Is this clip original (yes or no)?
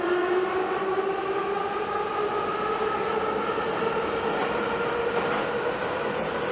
yes